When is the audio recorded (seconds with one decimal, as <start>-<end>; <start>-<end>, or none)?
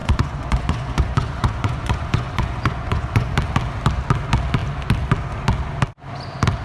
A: 3.3-6.6